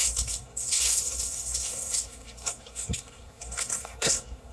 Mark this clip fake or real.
fake